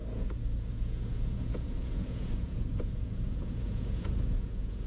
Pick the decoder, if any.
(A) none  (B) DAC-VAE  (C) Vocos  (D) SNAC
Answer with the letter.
C